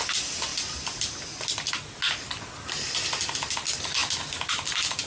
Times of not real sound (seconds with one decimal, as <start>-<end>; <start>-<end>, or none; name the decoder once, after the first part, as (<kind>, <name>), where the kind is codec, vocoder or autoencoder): none